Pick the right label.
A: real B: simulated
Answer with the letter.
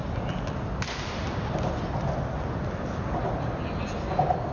A